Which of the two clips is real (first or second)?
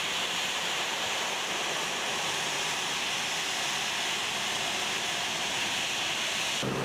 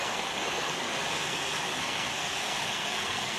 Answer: first